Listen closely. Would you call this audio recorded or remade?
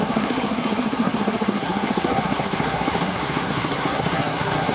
remade